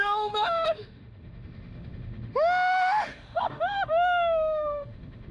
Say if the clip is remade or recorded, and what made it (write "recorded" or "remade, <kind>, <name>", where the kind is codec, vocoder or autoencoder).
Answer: remade, autoencoder, DAC-VAE